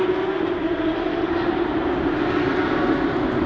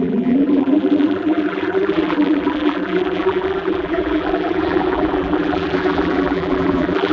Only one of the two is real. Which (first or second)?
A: first